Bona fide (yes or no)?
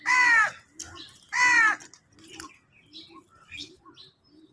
yes